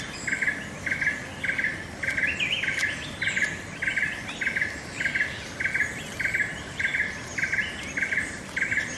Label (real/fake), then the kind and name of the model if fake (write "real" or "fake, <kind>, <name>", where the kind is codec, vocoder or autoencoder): real